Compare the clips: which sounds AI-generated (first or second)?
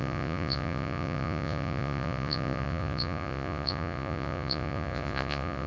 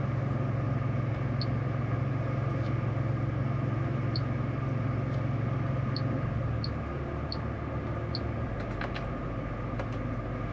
first